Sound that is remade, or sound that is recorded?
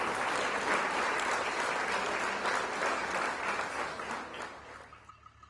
recorded